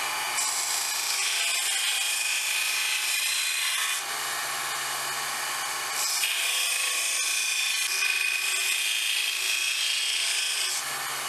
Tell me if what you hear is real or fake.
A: real